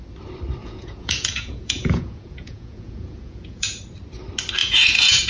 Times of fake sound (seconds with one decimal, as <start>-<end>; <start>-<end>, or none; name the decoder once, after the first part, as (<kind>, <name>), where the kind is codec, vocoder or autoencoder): 0.6-3.8 (vocoder, Vocos); 4.6-5.3